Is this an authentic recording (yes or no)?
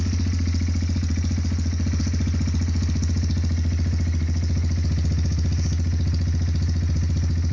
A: yes